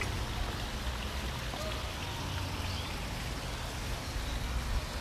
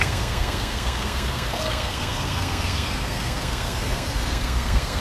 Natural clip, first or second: first